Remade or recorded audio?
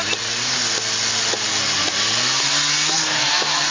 recorded